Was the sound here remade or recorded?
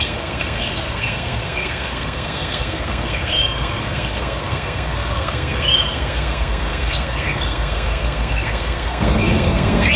remade